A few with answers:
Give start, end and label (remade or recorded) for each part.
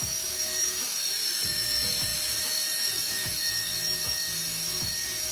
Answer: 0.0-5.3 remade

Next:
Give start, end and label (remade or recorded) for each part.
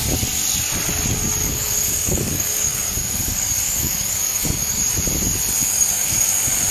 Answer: 0.0-1.4 recorded; 1.4-4.8 remade; 4.8-5.6 recorded; 5.6-6.3 remade; 6.3-6.7 recorded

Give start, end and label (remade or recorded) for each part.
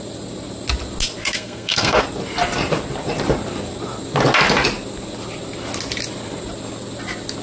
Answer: 0.0-1.2 recorded; 1.2-2.0 remade; 2.0-7.4 recorded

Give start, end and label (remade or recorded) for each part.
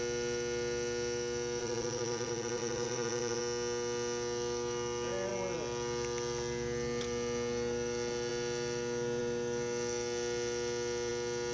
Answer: 0.0-1.6 recorded; 1.6-3.4 remade; 3.4-11.5 recorded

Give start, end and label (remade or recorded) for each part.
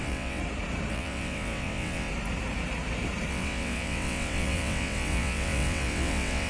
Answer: 0.0-0.4 remade; 0.4-0.9 recorded; 0.9-2.1 remade; 2.1-3.3 recorded; 3.3-6.5 remade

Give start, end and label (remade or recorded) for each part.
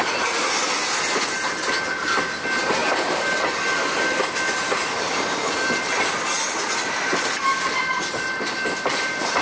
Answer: 0.0-9.4 recorded